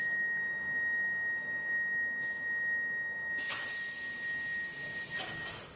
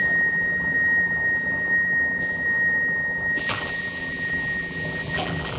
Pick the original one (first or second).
first